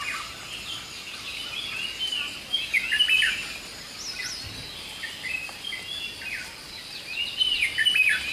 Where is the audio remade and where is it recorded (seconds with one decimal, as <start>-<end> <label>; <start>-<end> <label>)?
0.0-8.3 recorded